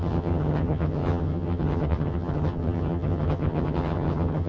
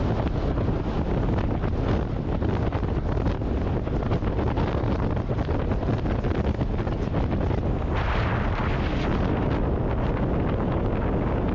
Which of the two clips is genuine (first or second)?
second